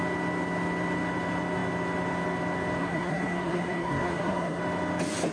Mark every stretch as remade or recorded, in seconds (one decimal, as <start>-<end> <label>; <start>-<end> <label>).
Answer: 0.0-2.8 recorded; 2.8-4.6 remade; 4.6-5.3 recorded